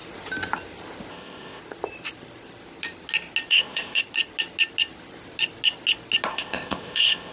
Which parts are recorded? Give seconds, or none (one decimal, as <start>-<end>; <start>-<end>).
0.0-1.1; 1.6-3.5; 4.0-6.3